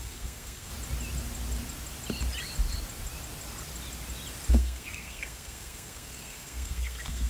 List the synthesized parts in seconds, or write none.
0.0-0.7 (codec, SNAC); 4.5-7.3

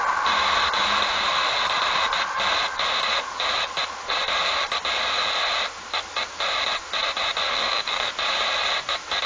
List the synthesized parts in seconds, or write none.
7.5-8.1 (codec, SNAC)